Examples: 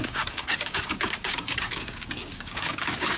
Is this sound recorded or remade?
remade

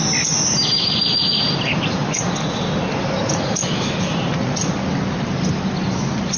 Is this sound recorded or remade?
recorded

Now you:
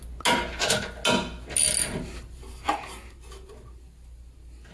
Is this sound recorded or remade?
recorded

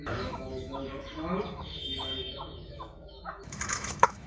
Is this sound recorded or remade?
remade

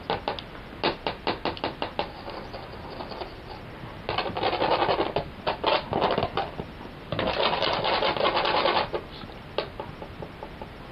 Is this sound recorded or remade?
recorded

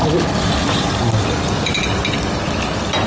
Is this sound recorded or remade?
recorded